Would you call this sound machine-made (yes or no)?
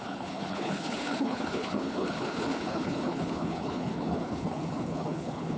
yes